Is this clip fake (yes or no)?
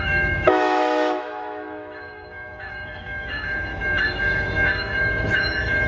yes